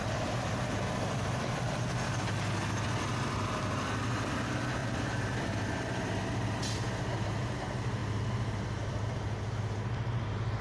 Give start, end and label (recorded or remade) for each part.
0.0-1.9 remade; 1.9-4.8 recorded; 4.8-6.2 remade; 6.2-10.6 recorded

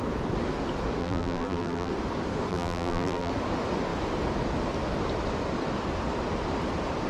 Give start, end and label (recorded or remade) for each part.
0.0-1.0 recorded; 1.0-1.9 remade; 1.9-2.5 recorded; 2.5-3.3 remade; 3.3-7.1 recorded